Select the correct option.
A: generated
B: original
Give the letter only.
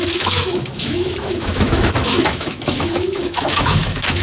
A